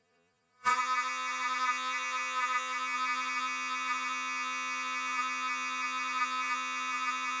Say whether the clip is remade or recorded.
remade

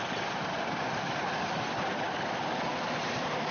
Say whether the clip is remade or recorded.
recorded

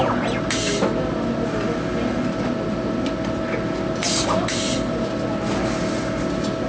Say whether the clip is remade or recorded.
recorded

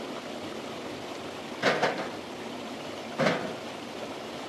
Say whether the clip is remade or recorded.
recorded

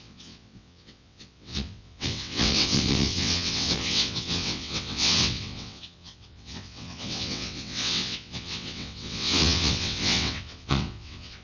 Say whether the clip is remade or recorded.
remade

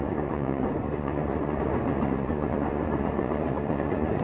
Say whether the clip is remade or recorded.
remade